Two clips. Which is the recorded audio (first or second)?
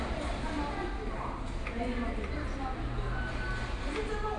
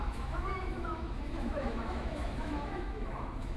first